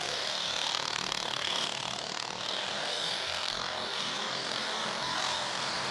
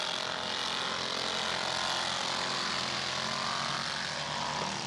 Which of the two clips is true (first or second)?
second